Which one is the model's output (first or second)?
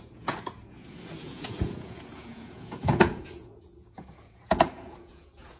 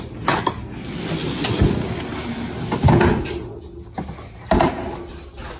first